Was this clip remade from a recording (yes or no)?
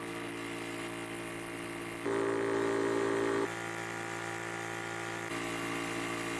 no